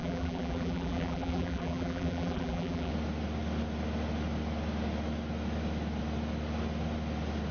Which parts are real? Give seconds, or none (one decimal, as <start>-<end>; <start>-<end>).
2.9-7.5